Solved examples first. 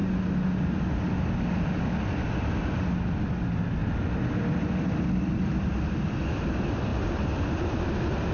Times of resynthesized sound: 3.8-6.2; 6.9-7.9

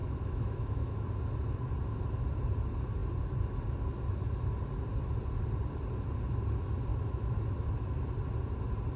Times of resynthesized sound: 0.0-1.1; 6.9-7.5